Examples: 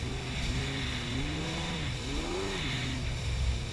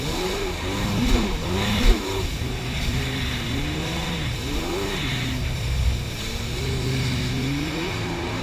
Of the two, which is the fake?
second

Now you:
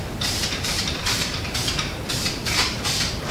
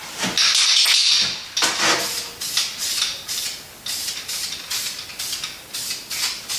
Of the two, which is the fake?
first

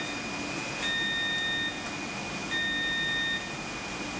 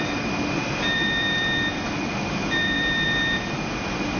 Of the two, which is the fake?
second